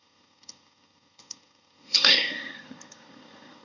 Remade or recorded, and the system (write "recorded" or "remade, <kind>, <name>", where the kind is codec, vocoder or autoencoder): remade, codec, SNAC